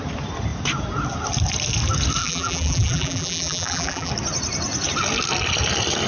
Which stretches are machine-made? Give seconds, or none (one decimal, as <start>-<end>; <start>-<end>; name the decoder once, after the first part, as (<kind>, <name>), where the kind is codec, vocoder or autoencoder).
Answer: 2.2-4.1 (vocoder, BigVGAN v2)